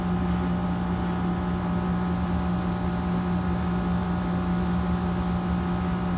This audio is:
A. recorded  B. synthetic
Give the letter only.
A